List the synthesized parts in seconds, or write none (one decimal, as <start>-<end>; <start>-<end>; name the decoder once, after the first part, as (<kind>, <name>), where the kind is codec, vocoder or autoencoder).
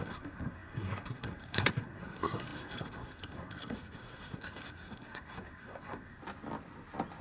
0.0-6.2 (codec, SNAC)